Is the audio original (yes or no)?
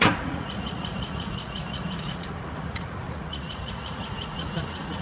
no